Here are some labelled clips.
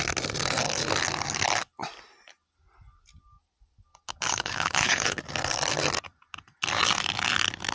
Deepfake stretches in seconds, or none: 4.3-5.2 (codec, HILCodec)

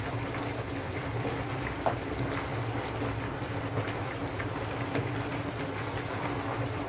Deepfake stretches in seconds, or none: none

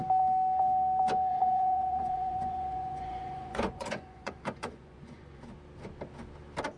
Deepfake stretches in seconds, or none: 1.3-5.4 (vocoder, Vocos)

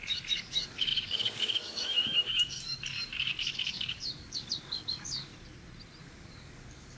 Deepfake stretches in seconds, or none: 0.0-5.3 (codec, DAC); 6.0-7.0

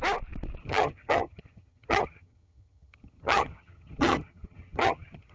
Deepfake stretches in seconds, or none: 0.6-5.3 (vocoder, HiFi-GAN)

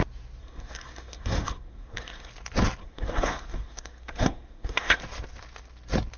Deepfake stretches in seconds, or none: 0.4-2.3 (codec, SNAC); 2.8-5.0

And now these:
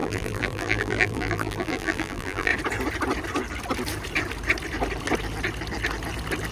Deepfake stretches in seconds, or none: 0.0-2.5 (vocoder, BigVGAN v2)